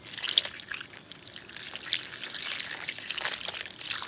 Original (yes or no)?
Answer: yes